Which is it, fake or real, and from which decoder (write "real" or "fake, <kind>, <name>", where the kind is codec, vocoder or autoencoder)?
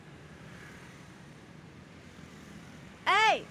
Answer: fake, vocoder, BigVGAN v2